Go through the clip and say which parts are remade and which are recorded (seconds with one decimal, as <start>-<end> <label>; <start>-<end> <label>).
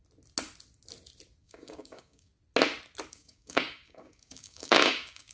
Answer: 0.0-1.4 recorded; 1.4-2.3 remade; 2.3-3.1 recorded; 3.1-5.3 remade